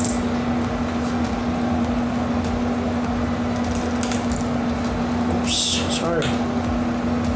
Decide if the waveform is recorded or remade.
recorded